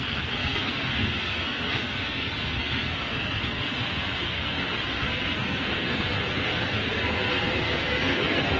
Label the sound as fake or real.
fake